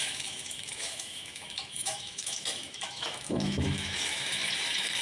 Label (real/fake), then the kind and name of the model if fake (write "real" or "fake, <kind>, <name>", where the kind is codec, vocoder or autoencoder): fake, autoencoder, DAC-VAE